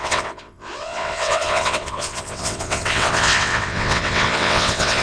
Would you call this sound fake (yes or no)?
yes